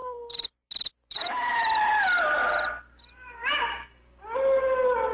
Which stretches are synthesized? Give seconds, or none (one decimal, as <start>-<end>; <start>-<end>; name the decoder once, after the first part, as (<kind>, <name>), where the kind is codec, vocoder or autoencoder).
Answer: 1.1-1.6 (vocoder, Vocos)